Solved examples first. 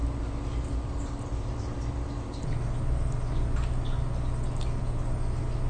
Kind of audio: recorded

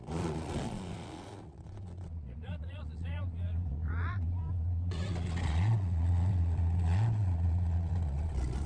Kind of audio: remade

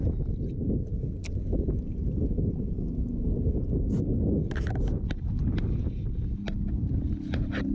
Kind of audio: recorded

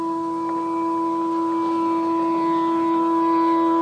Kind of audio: recorded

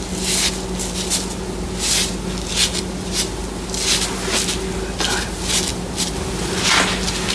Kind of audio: recorded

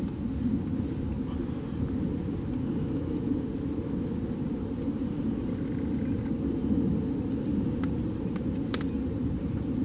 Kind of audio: recorded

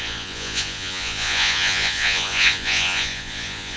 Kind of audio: remade